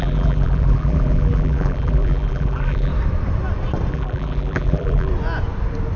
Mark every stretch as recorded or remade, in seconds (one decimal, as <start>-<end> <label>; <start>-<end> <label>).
0.0-2.9 remade; 2.9-3.9 recorded; 3.9-5.1 remade; 5.1-6.0 recorded